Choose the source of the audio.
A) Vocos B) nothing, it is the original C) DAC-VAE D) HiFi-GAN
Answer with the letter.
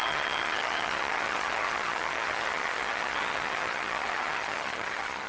D